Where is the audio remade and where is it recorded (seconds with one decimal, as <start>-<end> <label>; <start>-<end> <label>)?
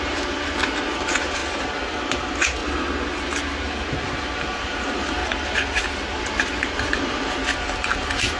0.0-1.4 remade; 1.4-2.0 recorded; 2.0-2.6 remade; 2.6-4.4 recorded; 4.4-5.2 remade; 5.2-6.1 recorded; 6.1-7.4 remade; 7.4-8.4 recorded